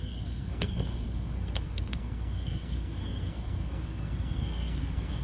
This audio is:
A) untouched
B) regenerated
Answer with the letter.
B